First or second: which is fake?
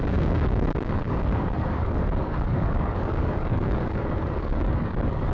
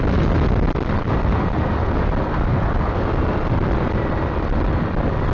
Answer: first